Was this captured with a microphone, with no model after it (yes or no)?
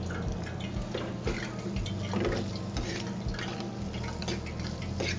yes